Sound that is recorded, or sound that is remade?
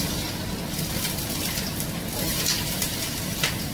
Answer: recorded